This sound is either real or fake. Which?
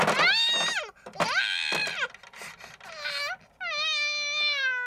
real